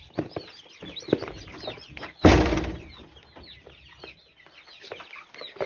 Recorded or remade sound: recorded